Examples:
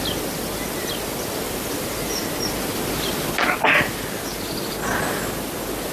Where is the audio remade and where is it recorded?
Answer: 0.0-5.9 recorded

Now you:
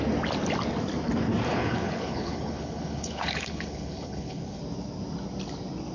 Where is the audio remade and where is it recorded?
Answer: 0.0-1.5 recorded; 1.5-4.6 remade; 4.6-5.9 recorded

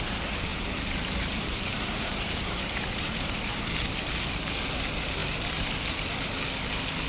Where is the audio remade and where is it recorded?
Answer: 0.0-0.5 recorded; 0.5-3.6 remade; 3.6-7.1 recorded

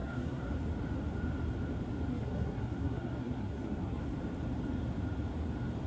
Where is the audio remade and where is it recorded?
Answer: 0.0-0.5 remade; 0.5-2.1 recorded; 2.1-4.0 remade; 4.0-5.9 recorded

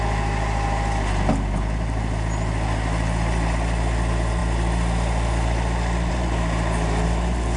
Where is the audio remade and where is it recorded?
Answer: 0.0-7.6 recorded

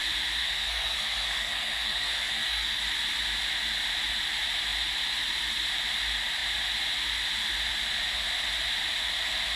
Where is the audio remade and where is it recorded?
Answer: 0.0-0.4 recorded; 0.4-2.8 remade; 2.8-9.6 recorded

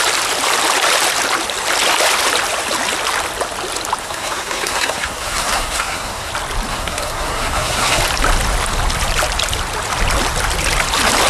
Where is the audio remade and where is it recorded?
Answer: 0.0-4.0 recorded; 4.0-6.3 remade; 6.3-6.7 recorded; 6.7-8.0 remade; 8.0-11.3 recorded

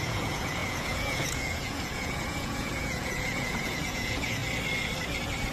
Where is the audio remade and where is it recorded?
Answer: 0.0-4.4 remade; 4.4-5.5 recorded